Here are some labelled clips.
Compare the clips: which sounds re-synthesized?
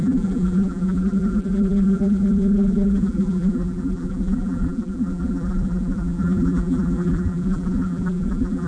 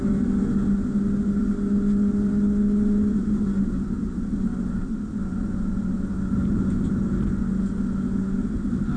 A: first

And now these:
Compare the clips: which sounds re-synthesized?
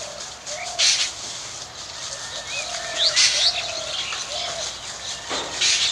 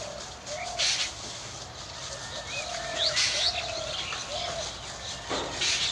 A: second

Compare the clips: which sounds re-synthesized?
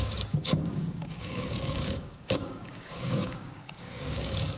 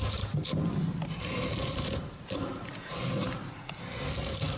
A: first